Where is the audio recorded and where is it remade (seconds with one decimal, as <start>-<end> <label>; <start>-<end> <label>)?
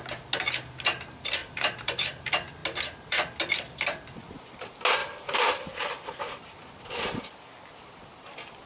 0.0-1.4 recorded; 1.4-2.2 remade; 2.2-5.0 recorded; 5.0-6.4 remade; 6.4-8.7 recorded